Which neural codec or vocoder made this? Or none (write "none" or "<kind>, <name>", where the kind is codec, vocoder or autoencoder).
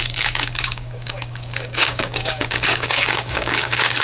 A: codec, DAC